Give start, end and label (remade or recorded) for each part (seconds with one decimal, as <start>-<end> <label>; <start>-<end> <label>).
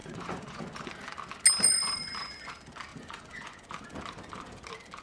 0.0-0.6 remade; 0.6-1.8 recorded; 1.8-2.5 remade; 2.5-2.9 recorded; 2.9-3.7 remade; 3.7-5.0 recorded